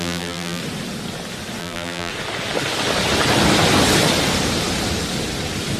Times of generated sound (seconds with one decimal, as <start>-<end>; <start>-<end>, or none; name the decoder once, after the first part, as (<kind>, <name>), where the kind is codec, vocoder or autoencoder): 0.0-0.6 (vocoder, BigVGAN v2); 1.6-2.1